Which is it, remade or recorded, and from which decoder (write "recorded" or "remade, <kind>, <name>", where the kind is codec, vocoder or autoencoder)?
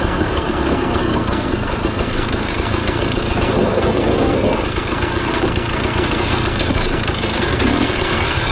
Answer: remade, codec, SNAC